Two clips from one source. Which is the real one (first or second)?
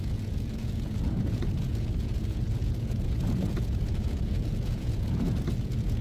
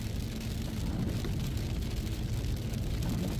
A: second